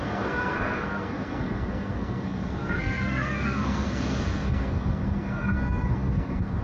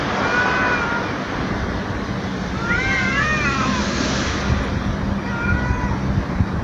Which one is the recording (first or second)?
second